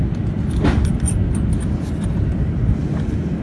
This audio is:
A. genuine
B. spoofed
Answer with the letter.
A